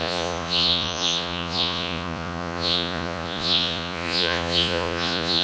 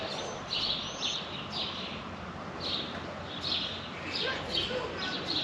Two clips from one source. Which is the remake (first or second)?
first